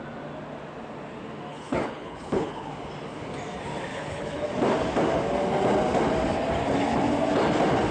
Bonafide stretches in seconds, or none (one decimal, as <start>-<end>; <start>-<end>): 0.0-1.5; 2.7-3.9; 4.4-7.9